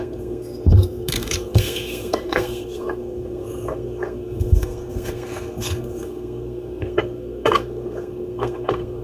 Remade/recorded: remade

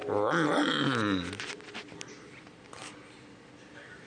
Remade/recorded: recorded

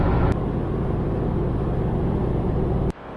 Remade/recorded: recorded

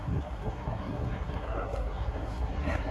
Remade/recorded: remade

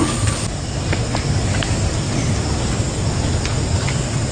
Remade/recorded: recorded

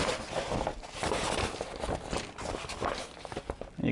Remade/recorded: recorded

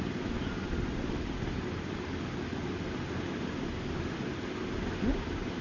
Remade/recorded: recorded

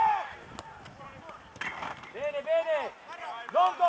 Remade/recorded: recorded